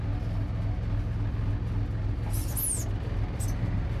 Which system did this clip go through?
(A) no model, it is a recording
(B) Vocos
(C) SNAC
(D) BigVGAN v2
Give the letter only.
A